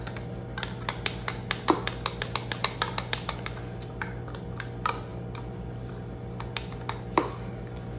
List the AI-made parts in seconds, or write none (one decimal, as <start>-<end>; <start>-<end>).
none